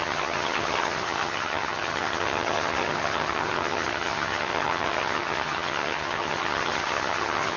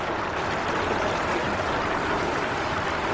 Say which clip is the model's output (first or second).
first